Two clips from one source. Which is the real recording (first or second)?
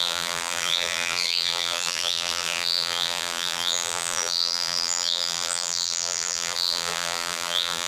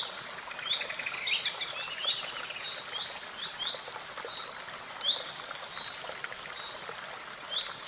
second